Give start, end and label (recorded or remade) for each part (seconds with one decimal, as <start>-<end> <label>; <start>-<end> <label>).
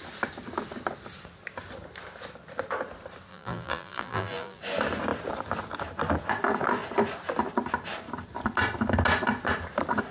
0.0-3.3 recorded; 3.3-4.6 remade; 4.6-10.1 recorded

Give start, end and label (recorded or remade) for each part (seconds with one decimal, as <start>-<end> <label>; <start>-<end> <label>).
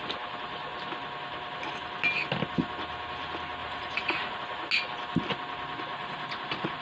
0.0-3.6 recorded; 3.6-4.4 remade; 4.4-5.9 recorded; 5.9-6.8 remade